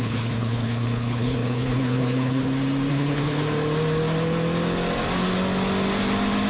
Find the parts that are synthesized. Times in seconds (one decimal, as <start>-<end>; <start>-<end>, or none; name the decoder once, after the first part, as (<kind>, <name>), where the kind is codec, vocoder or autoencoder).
0.0-2.4 (codec, HILCodec); 2.9-3.4